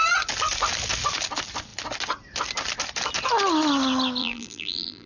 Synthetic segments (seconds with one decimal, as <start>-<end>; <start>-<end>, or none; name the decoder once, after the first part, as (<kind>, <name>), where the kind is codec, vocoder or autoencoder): 4.2-5.1 (vocoder, BigVGAN v2)